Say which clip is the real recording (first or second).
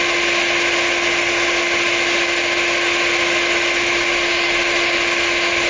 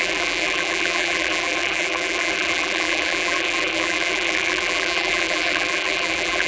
first